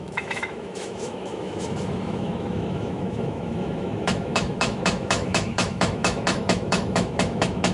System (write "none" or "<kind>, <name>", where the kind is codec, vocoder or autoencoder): autoencoder, DAC-VAE